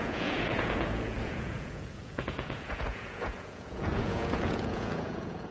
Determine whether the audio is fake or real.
fake